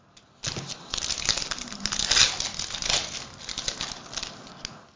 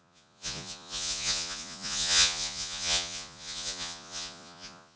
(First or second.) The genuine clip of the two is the first